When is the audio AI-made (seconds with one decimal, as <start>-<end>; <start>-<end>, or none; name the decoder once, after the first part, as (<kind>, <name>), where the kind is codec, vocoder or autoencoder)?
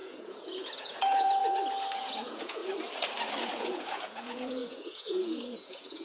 0.0-1.4 (vocoder, Vocos); 2.0-2.6; 3.4-6.0